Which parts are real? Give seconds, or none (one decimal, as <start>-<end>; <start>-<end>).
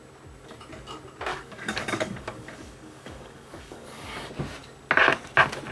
0.0-1.3; 4.3-5.7